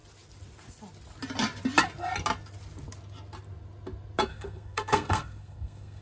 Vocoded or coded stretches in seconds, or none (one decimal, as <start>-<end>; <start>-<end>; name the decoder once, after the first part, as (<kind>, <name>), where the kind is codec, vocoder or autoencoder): 4.3-6.0 (codec, SNAC)